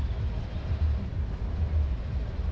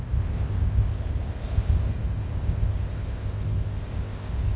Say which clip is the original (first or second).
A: first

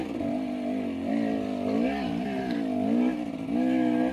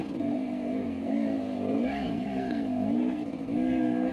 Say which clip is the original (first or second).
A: first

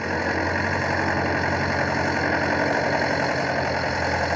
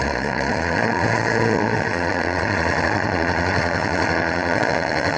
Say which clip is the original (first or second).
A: first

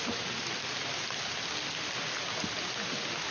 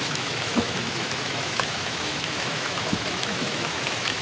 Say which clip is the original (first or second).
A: first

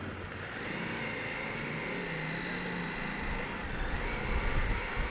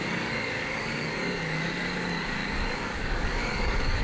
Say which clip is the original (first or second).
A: first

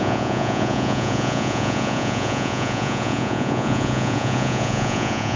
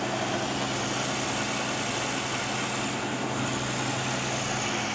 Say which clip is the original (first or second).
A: second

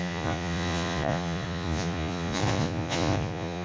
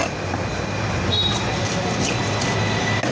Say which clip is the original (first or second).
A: second